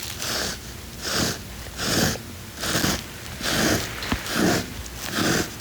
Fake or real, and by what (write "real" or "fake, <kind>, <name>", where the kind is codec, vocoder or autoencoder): real